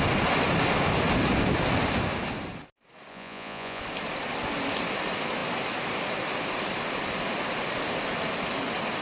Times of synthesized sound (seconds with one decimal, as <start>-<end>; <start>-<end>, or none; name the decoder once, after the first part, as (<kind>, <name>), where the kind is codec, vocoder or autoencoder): 3.1-3.8 (vocoder, Vocos)